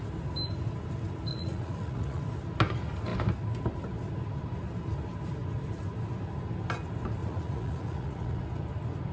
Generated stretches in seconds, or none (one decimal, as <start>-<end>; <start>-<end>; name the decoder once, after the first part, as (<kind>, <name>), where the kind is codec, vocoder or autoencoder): 1.3-2.2 (vocoder, Vocos); 7.2-8.4